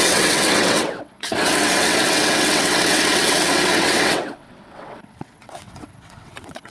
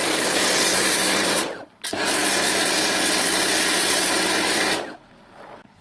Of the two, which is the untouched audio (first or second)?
second